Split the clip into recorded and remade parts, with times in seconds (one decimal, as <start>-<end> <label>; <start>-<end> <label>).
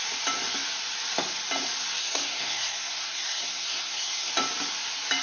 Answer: 0.0-2.0 recorded; 2.0-4.3 remade; 4.3-5.2 recorded